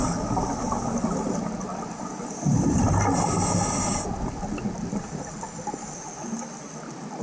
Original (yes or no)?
yes